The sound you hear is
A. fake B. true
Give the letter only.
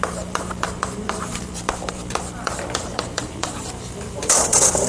A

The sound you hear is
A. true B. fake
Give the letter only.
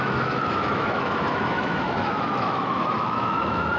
B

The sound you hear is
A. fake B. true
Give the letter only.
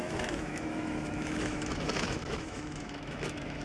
A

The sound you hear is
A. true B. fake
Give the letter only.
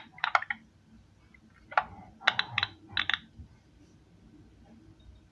A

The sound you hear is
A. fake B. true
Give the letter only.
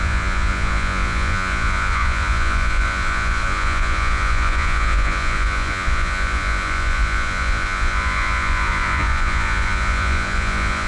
A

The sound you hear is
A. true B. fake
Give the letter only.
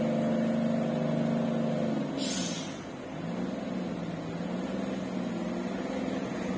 A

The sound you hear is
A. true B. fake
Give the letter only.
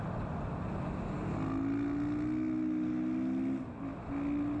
A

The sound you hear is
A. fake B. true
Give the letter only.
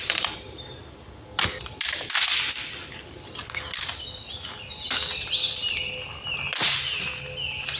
B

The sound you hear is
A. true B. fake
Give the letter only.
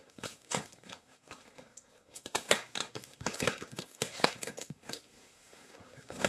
B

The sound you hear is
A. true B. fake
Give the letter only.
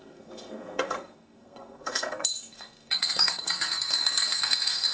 B